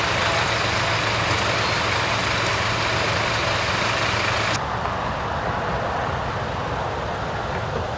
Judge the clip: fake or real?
real